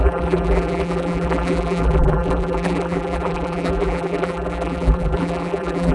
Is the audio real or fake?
fake